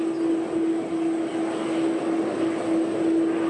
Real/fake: real